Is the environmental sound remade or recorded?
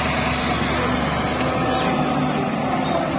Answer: recorded